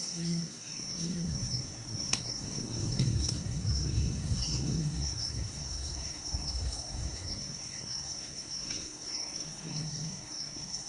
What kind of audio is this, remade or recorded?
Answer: remade